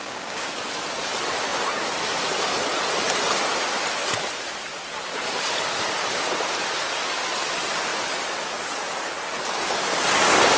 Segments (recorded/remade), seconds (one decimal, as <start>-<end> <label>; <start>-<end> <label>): 0.0-0.6 remade; 0.6-10.6 recorded